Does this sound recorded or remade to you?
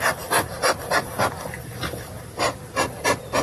recorded